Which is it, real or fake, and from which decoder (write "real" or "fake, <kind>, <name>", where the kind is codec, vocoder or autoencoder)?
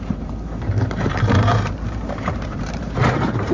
fake, vocoder, BigVGAN v2